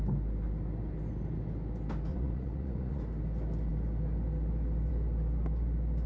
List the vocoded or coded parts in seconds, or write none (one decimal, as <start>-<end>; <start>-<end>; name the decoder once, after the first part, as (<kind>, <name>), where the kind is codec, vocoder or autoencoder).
2.1-3.0 (vocoder, Vocos)